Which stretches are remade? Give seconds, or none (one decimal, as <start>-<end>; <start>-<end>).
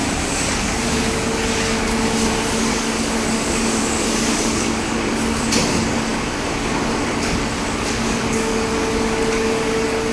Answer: 0.0-10.1